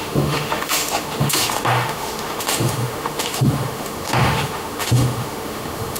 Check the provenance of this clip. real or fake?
fake